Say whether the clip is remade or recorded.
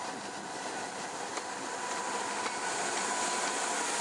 recorded